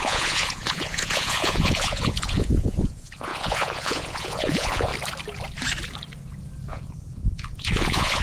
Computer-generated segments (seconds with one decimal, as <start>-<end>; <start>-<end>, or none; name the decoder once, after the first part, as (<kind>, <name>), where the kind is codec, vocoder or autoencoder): 0.0-4.9 (vocoder, Vocos); 6.7-8.2

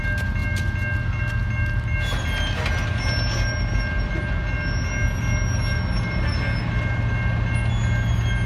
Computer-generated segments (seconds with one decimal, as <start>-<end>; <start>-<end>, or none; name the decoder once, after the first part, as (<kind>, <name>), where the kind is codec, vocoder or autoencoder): none

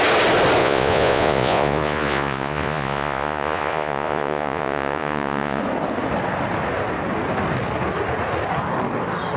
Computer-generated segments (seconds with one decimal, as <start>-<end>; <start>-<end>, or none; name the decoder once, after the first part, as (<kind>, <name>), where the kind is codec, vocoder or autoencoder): 0.6-5.6 (vocoder, Vocos)

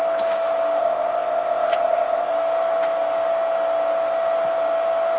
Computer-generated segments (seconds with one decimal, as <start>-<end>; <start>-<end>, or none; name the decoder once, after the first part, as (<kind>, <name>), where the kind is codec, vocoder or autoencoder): 0.8-2.3 (codec, ZipCodec)

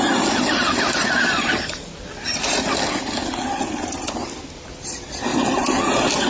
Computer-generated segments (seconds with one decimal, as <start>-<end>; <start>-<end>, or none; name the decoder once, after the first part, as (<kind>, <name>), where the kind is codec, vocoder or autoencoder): none

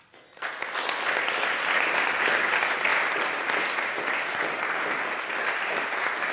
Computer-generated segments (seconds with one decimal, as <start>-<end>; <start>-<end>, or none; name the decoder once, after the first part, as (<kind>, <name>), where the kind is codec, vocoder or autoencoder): none

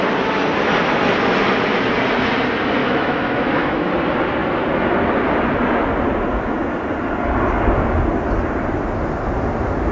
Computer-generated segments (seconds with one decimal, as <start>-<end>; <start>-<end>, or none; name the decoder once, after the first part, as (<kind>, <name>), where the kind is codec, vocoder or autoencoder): 2.8-3.9 (autoencoder, DAC-VAE)

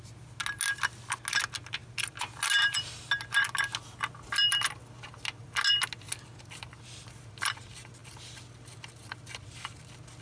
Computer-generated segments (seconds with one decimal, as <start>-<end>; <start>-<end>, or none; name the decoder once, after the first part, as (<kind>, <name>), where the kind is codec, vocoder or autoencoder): none